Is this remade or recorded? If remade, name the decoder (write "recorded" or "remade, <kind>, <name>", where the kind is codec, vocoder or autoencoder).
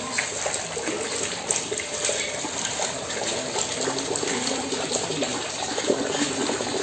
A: recorded